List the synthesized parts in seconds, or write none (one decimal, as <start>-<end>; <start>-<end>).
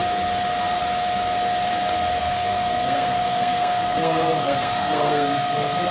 2.2-5.9